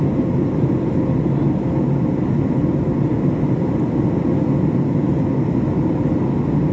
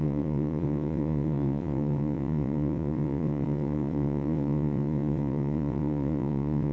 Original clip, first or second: first